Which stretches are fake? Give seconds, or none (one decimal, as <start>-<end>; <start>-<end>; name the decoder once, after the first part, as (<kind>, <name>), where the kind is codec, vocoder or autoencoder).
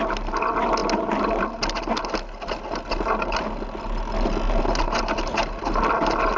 none